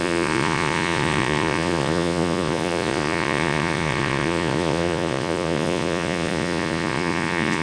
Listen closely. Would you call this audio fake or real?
fake